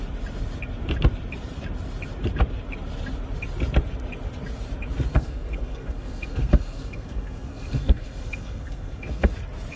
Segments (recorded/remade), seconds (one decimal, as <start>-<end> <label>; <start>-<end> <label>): 0.0-5.1 recorded; 5.1-9.3 remade; 9.3-9.8 recorded